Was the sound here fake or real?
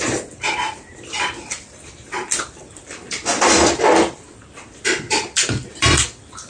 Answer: fake